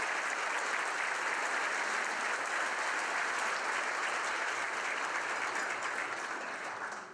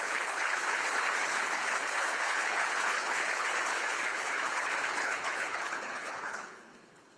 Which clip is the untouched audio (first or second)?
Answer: first